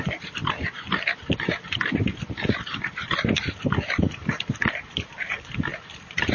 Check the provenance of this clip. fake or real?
fake